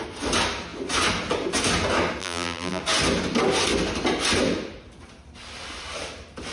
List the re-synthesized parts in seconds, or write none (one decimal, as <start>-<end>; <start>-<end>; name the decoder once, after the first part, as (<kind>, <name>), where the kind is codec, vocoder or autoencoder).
2.2-2.8 (vocoder, BigVGAN v2)